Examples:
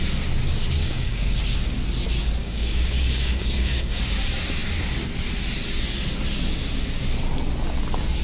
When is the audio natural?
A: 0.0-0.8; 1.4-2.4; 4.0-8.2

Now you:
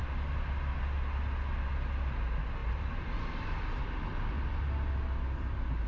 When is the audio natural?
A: 0.0-5.9

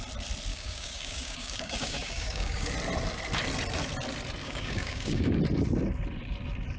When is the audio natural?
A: 0.0-0.5; 2.7-4.4; 5.4-6.8

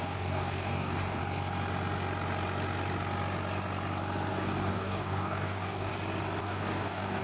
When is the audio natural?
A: 1.2-4.3; 5.9-6.4

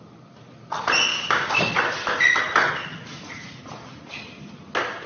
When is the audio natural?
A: 0.0-1.1; 1.6-5.1

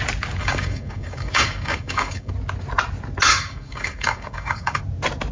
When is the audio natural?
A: 0.0-0.4; 2.3-3.3; 4.8-5.3

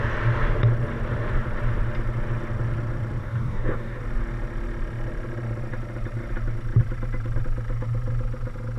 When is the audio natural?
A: 0.0-3.2; 4.0-8.8